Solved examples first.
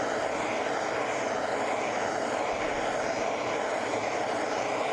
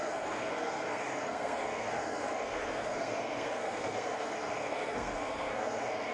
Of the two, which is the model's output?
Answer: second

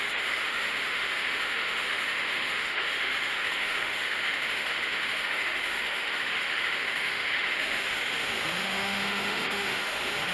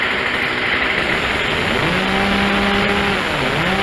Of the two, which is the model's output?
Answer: first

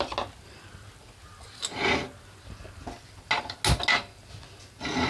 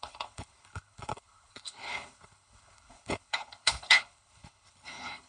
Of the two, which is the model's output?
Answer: second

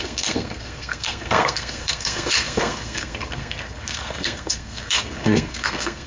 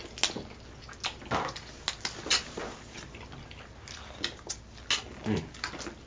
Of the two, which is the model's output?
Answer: first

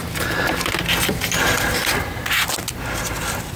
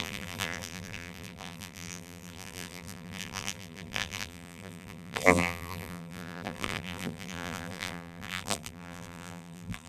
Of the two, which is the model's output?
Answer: second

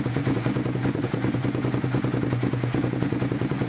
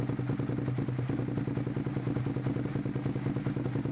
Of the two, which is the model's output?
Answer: first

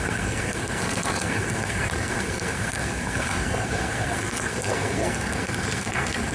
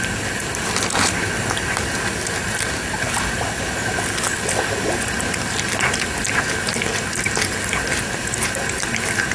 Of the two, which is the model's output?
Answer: first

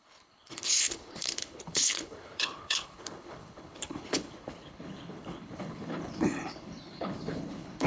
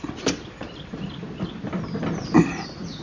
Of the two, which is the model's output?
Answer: first